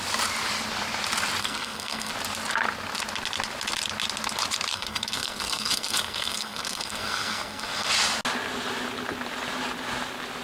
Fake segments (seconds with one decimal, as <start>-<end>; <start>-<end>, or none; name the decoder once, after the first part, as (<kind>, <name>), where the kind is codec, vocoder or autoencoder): 1.4-2.1 (codec, SNAC); 4.7-7.9